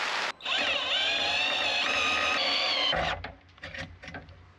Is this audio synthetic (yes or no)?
no